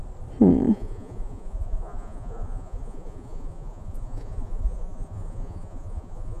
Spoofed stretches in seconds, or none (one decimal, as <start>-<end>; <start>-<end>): 0.7-6.4